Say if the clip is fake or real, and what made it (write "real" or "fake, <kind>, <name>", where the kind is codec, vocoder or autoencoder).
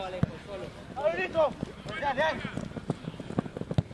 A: real